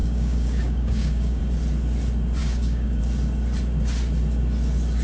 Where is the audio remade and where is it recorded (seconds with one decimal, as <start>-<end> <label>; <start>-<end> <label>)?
0.0-1.4 remade; 1.4-2.4 recorded; 2.4-3.0 remade; 3.0-5.0 recorded